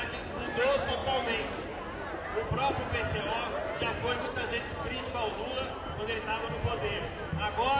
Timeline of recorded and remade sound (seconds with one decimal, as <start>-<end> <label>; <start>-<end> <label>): 0.0-7.8 recorded